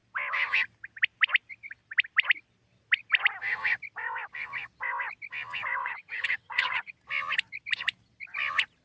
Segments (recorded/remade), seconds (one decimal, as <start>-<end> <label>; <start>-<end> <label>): 0.0-5.8 recorded; 5.8-6.9 remade; 6.9-8.8 recorded